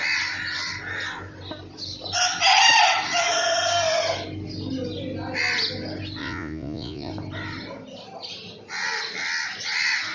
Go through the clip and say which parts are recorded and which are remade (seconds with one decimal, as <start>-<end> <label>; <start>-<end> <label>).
0.0-6.2 recorded; 6.2-7.1 remade; 7.1-10.1 recorded